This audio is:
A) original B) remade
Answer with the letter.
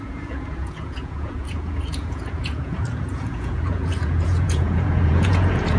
B